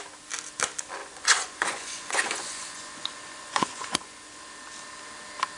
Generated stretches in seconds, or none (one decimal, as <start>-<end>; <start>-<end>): 1.0-4.4